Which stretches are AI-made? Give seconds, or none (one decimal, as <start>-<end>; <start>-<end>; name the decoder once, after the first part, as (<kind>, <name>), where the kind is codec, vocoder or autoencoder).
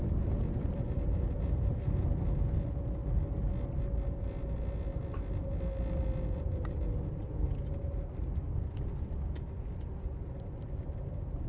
none